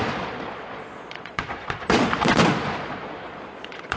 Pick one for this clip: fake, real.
fake